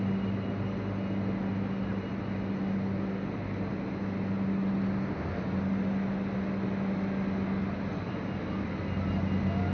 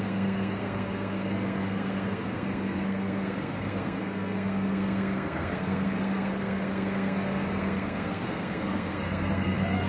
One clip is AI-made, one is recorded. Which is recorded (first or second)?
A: first